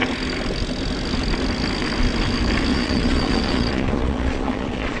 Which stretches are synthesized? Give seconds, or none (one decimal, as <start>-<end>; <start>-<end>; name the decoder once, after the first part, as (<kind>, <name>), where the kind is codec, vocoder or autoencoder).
2.7-5.0 (vocoder, Vocos)